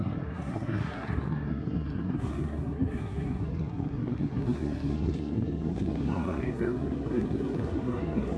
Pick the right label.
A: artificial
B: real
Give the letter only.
A